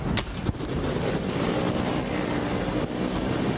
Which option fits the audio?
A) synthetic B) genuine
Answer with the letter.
B